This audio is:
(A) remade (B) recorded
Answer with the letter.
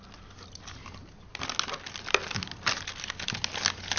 B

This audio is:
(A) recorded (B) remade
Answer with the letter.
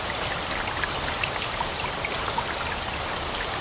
A